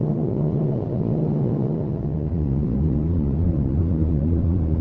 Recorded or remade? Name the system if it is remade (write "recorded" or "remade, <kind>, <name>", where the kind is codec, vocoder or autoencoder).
remade, vocoder, Vocos